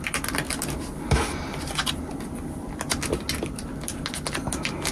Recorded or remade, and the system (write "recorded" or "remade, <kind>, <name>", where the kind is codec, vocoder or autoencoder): recorded